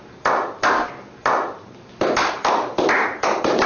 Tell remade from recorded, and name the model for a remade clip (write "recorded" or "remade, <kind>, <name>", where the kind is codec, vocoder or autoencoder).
recorded